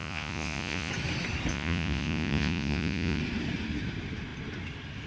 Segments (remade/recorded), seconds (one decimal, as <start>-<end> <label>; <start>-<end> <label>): 0.0-0.9 remade; 0.9-1.5 recorded; 1.5-3.2 remade; 3.2-5.1 recorded